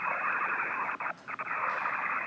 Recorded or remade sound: recorded